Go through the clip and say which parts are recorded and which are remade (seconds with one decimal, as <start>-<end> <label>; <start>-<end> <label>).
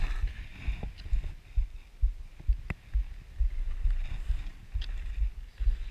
0.0-5.9 recorded